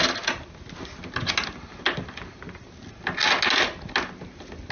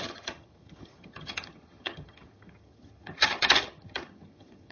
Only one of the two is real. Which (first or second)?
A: first